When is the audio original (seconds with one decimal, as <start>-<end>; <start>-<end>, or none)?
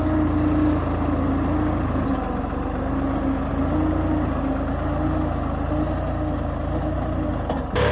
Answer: 0.0-7.9